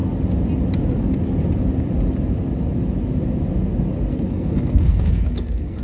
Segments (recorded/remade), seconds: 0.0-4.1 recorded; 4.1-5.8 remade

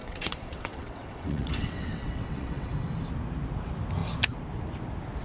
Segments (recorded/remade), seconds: 0.0-2.7 remade; 2.7-5.2 recorded